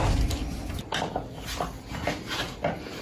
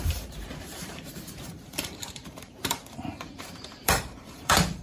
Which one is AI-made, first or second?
second